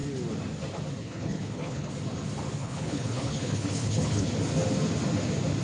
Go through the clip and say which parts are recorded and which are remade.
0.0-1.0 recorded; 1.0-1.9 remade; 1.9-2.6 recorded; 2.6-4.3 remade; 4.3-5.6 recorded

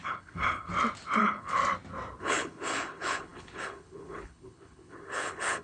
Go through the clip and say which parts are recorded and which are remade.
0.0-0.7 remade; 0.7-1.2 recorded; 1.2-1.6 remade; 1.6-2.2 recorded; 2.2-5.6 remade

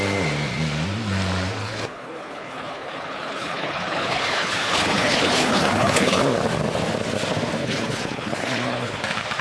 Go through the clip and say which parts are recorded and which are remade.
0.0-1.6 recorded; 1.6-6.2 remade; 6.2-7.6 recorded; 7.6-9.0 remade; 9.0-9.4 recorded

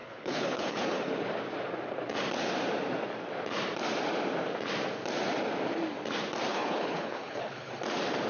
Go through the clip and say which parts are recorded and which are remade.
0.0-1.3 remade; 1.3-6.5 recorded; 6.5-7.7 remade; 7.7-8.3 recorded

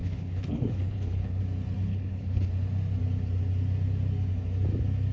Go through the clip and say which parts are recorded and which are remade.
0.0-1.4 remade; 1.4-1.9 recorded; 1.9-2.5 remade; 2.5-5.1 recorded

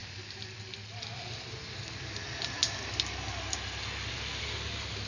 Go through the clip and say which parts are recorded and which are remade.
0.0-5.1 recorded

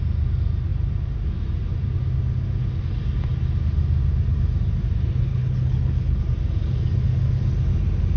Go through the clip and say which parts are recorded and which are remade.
0.0-5.3 recorded; 5.3-6.2 remade; 6.2-8.2 recorded